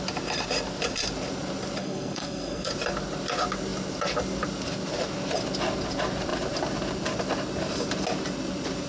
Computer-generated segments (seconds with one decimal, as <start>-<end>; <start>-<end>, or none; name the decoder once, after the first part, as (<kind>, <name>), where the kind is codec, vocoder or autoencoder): 1.8-2.7 (codec, SNAC)